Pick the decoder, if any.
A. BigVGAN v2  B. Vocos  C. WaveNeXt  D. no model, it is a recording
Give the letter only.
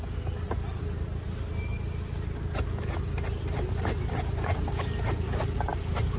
D